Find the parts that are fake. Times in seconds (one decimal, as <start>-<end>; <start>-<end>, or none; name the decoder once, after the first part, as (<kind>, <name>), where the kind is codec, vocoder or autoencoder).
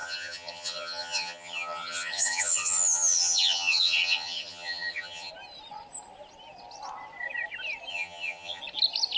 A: 0.0-5.3 (vocoder, HiFi-GAN); 7.9-8.6